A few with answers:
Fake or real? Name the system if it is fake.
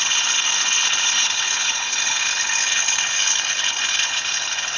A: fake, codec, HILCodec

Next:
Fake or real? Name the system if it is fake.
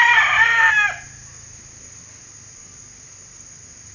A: real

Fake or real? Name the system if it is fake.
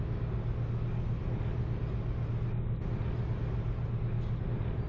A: real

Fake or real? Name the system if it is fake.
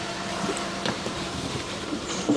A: fake, vocoder, BigVGAN v2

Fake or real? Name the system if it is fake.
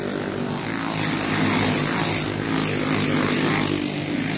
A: real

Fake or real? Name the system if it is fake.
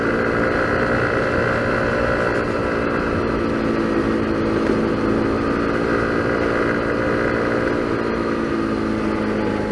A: real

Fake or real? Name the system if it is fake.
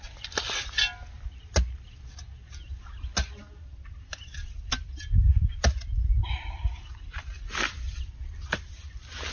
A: real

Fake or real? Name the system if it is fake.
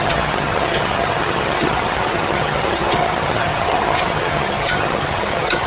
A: fake, vocoder, HiFi-GAN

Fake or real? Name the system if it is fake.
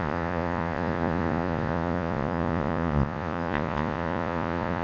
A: fake, vocoder, Vocos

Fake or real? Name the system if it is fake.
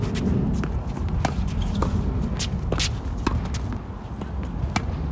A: real